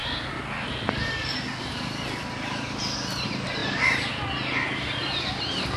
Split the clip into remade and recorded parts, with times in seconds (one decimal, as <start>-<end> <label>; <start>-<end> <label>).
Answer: 0.0-3.6 recorded; 3.6-4.1 remade; 4.1-5.8 recorded

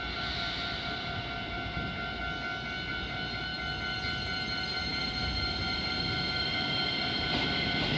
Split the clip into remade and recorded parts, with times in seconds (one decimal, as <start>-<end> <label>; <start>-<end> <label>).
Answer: 0.0-2.2 remade; 2.2-2.9 recorded; 2.9-3.5 remade; 3.5-4.8 recorded; 4.8-8.0 remade

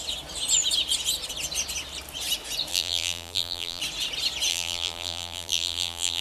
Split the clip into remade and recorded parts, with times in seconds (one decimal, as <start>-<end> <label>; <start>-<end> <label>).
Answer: 0.0-2.7 recorded; 2.7-3.8 remade; 3.8-4.5 recorded; 4.5-6.2 remade

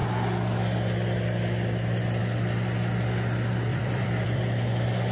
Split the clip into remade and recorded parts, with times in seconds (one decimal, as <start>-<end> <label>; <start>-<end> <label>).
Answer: 0.0-3.7 recorded; 3.7-4.4 remade; 4.4-5.1 recorded